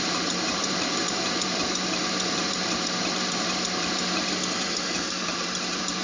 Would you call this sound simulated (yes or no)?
yes